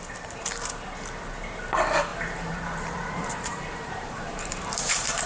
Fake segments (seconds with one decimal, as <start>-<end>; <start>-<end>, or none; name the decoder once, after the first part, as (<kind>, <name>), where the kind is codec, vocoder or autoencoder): 2.1-5.3 (vocoder, BigVGAN v2)